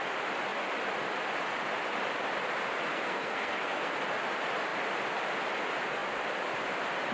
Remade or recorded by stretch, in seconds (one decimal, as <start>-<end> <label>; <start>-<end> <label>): 0.0-2.9 recorded; 2.9-3.9 remade; 3.9-7.1 recorded